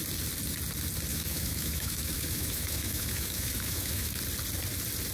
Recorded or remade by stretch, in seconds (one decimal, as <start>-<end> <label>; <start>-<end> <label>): 0.0-1.1 recorded; 1.1-4.2 remade; 4.2-5.1 recorded